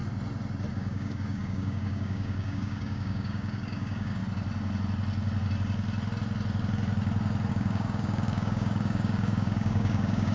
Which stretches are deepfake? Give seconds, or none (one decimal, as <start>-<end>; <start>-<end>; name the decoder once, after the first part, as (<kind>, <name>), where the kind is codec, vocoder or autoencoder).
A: 0.7-4.2 (codec, DAC); 7.5-10.3